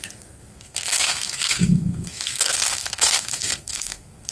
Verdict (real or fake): fake